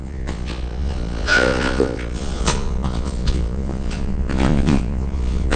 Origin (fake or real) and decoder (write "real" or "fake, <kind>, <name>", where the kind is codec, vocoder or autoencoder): fake, vocoder, Vocos